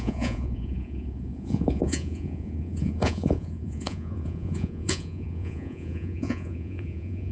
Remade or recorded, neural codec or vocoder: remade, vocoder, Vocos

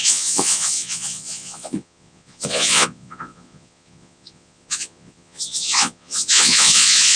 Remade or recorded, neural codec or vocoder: remade, vocoder, Vocos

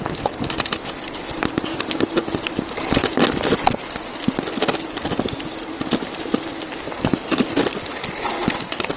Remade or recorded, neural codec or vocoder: recorded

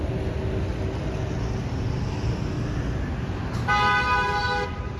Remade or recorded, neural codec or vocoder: recorded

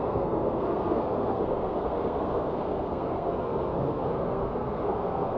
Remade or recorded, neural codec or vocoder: remade, codec, SNAC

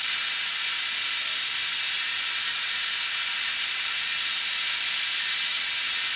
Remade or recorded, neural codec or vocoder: recorded